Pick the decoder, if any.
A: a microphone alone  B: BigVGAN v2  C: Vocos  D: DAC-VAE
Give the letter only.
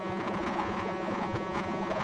C